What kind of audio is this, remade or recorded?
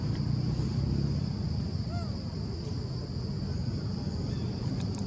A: recorded